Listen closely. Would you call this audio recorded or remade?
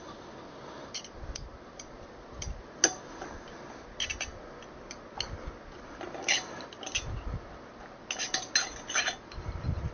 recorded